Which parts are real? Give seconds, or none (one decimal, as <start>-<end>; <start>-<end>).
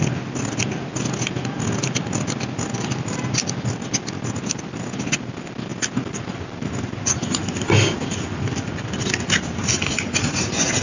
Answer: 0.0-10.8